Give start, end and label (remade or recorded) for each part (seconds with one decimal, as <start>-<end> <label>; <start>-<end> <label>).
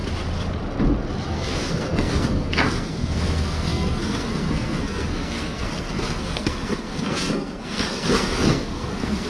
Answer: 0.0-1.3 recorded; 1.3-9.3 remade